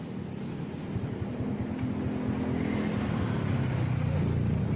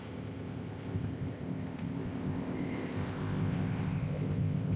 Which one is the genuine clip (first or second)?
first